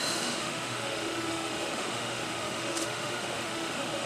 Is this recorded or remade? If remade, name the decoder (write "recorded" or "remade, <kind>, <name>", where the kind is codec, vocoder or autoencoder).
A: remade, autoencoder, DAC-VAE